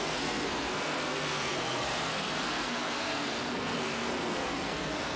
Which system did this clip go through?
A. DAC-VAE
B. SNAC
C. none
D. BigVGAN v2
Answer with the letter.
B